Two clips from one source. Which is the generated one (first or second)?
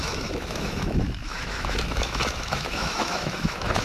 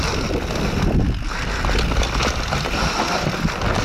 first